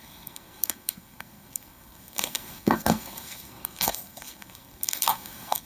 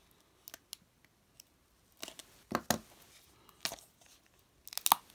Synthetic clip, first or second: first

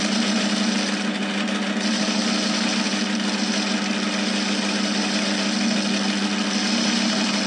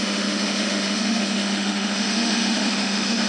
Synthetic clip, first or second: second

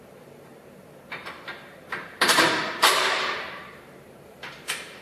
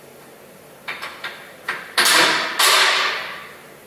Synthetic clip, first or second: first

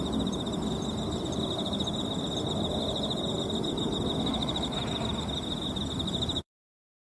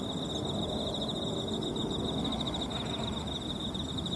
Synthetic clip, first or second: first